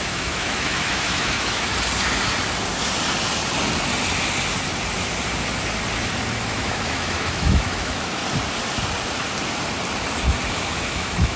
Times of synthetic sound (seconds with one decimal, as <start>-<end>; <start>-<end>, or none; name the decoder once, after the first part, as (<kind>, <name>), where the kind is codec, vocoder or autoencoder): 0.0-1.7 (autoencoder, DAC-VAE); 6.4-8.2; 10.5-11.4